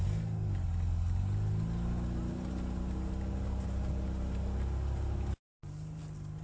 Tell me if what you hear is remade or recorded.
recorded